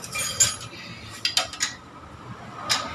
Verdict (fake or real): real